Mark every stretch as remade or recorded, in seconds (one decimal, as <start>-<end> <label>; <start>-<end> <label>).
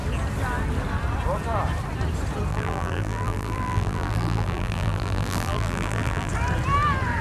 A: 0.0-2.5 recorded; 2.5-6.3 remade; 6.3-7.2 recorded